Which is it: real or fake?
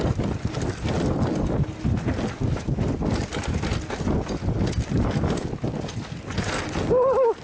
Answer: real